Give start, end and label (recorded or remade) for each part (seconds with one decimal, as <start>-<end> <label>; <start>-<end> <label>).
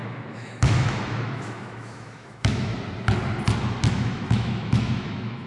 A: 0.0-2.7 remade; 2.7-3.9 recorded; 3.9-5.5 remade